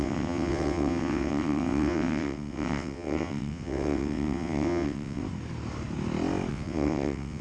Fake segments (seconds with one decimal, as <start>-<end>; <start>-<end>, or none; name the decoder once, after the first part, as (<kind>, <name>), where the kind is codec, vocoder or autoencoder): 0.0-5.2 (vocoder, WaveNeXt); 6.5-7.4

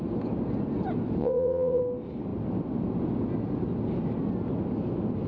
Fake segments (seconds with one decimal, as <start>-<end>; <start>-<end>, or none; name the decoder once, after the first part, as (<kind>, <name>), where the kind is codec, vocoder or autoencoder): 1.2-1.8 (vocoder, WaveNeXt)